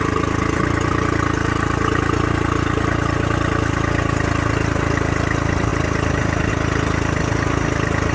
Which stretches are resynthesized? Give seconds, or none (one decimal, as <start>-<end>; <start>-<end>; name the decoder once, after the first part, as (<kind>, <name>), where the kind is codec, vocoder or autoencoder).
none